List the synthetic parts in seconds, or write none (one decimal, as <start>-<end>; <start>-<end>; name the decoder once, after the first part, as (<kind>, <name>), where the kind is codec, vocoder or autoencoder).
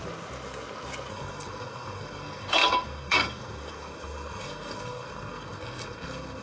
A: 1.1-6.4 (codec, SNAC)